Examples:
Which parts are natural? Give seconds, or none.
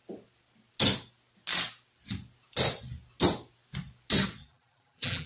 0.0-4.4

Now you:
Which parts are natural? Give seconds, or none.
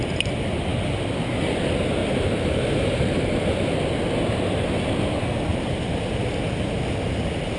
0.0-2.0; 3.3-5.5; 6.6-7.6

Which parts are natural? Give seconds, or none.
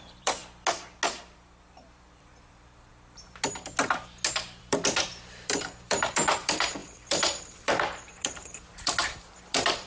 0.4-2.2; 2.9-4.6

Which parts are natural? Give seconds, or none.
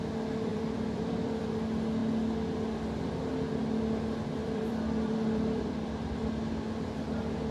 0.0-0.5; 1.4-4.4; 6.5-7.5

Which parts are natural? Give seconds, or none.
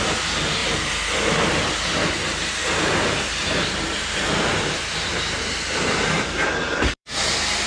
0.0-2.6; 7.2-7.7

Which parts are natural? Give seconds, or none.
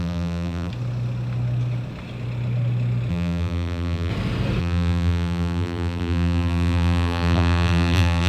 0.7-3.1; 4.1-4.6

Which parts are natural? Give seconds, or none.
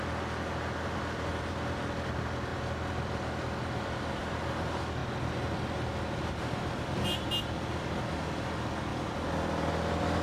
0.0-8.9; 9.7-10.2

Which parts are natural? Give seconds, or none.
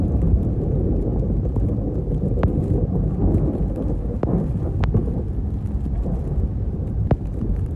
3.2-6.7